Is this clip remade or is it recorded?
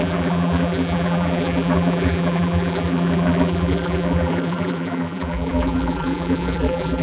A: remade